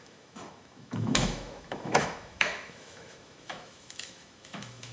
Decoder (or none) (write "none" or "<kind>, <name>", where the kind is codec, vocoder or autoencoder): autoencoder, DAC-VAE